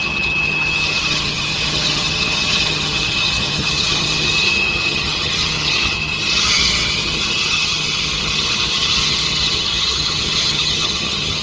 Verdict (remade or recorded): remade